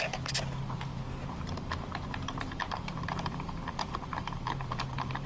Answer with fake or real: fake